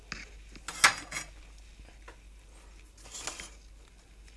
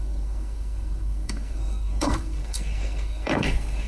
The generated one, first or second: second